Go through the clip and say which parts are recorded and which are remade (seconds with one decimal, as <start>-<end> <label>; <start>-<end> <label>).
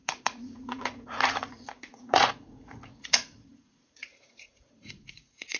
0.0-5.6 remade